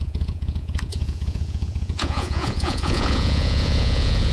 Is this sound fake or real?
fake